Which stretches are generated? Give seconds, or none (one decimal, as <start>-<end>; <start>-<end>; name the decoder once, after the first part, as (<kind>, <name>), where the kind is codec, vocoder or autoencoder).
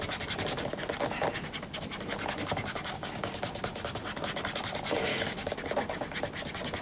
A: 2.7-3.3 (codec, DAC); 5.1-5.6